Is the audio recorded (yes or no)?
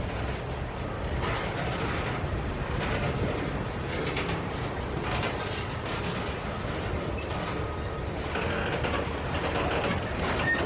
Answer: yes